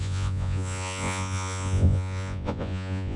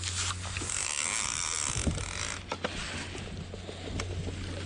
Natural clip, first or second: second